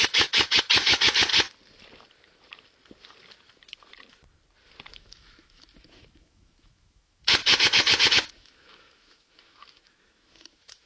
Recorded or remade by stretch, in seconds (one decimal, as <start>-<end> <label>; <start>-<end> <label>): 0.0-1.3 remade; 1.3-4.9 recorded; 4.9-10.9 remade